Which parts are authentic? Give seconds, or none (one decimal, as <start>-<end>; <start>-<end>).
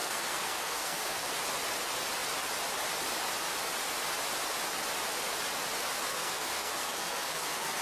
1.3-6.1